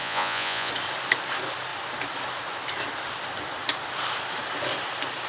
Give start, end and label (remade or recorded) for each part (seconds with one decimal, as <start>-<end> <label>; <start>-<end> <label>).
0.0-0.7 remade; 0.7-5.3 recorded